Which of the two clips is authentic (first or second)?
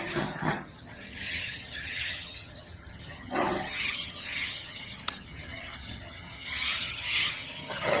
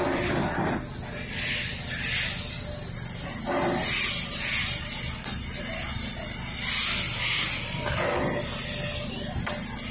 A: second